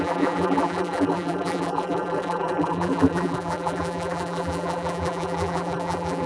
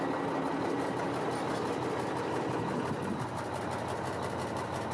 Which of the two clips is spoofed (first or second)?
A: first